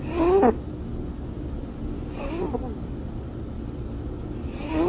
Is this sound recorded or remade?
recorded